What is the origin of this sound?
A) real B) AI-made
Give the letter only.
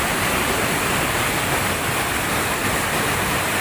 A